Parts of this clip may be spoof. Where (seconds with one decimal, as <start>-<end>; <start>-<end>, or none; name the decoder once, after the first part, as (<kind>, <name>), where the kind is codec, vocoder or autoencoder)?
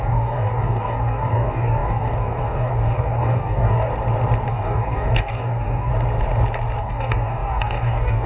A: 0.0-3.9 (codec, DAC); 4.5-5.9; 6.8-8.3